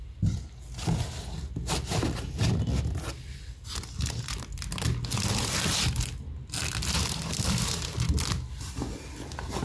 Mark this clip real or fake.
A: real